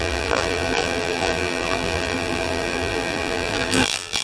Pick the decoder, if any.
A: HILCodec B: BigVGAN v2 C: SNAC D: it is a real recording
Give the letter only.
B